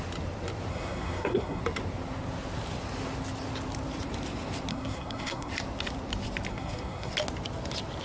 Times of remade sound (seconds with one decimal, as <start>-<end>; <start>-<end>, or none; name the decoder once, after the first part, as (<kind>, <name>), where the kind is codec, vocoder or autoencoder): 0.7-1.6 (codec, SNAC); 4.7-5.5; 6.5-7.1